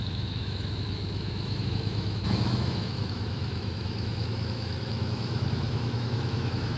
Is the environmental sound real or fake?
fake